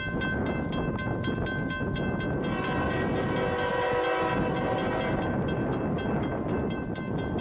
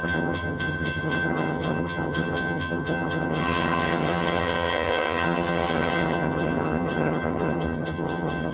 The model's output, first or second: second